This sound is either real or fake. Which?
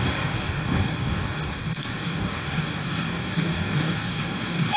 fake